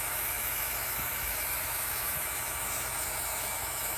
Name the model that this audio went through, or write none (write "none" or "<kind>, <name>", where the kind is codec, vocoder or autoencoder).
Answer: autoencoder, DAC-VAE